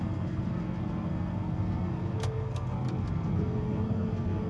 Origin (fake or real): fake